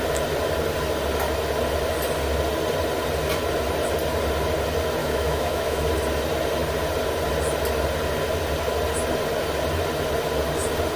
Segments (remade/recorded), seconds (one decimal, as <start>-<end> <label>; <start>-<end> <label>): 0.0-5.0 recorded; 5.0-5.9 remade; 5.9-11.0 recorded